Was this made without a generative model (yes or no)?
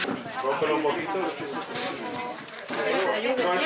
yes